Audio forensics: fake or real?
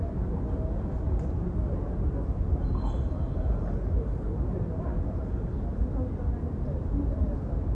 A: real